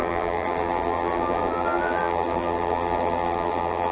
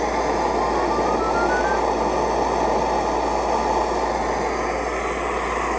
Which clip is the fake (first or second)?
first